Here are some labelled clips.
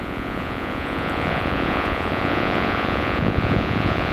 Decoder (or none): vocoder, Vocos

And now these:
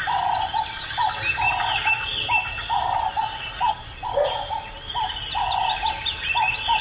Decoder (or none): none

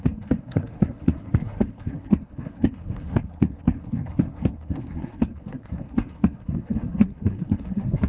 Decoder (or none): codec, SNAC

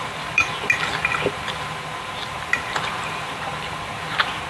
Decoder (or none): vocoder, BigVGAN v2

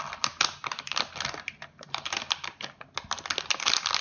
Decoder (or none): none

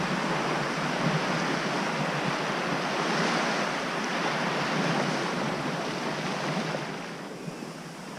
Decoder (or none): none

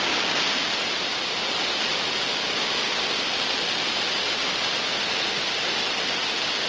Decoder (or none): none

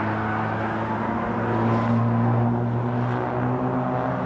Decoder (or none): none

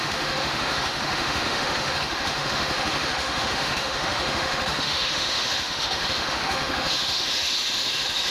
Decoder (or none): autoencoder, DAC-VAE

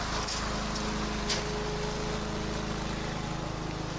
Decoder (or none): none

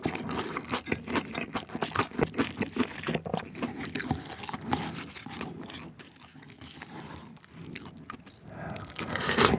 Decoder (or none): none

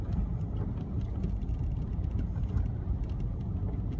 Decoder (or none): none